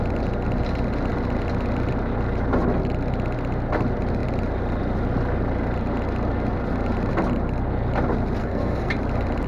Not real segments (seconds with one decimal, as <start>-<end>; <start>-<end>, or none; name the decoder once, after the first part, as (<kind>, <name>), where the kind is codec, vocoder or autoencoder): 8.4-8.9 (codec, SNAC)